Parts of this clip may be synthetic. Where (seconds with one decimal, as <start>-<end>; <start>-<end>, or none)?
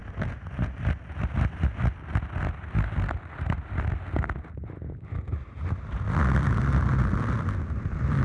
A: none